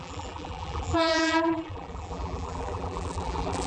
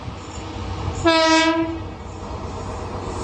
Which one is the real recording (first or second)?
second